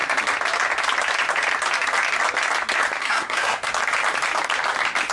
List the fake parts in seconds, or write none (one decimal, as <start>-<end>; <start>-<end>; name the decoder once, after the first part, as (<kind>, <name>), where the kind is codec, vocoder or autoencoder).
3.0-3.7 (codec, SNAC)

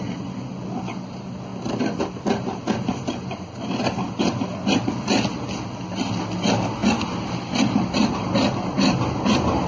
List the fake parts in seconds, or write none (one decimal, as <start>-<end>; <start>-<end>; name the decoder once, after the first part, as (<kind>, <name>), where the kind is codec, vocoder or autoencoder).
none

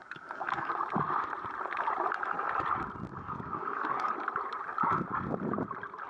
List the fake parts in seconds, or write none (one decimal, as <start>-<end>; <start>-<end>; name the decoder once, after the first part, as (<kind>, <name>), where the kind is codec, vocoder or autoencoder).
0.0-0.7 (codec, DAC); 3.1-4.1

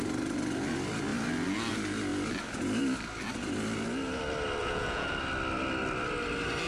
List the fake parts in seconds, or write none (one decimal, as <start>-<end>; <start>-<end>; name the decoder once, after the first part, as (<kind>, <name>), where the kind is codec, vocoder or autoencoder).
4.6-5.1 (vocoder, Vocos)

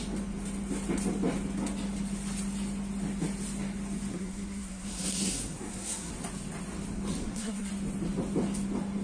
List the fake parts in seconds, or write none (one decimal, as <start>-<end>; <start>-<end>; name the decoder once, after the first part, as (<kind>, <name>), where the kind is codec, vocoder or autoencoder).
4.1-6.1 (codec, SNAC); 7.2-7.7